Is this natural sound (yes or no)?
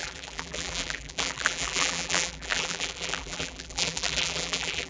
no